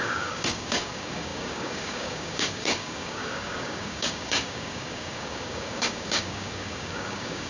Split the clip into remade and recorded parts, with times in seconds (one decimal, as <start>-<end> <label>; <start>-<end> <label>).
0.0-7.5 remade